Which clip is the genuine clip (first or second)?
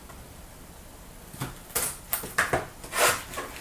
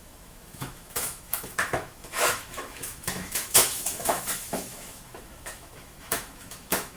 first